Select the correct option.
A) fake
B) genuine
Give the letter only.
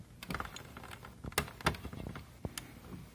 B